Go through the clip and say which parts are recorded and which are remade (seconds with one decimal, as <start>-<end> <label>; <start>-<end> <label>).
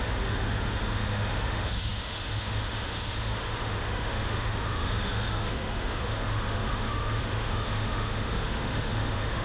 0.0-9.4 remade